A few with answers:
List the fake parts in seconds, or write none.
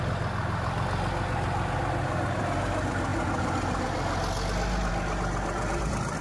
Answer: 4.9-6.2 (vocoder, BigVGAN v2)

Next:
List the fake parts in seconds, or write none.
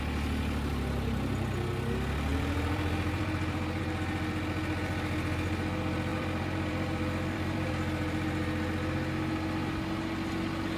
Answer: 2.3-3.8 (vocoder, BigVGAN v2); 6.1-7.7